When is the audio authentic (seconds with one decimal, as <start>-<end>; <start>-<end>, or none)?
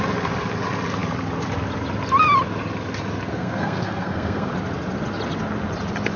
0.0-3.3; 4.5-6.2